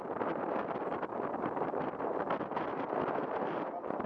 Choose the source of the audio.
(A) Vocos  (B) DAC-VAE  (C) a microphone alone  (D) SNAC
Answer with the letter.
C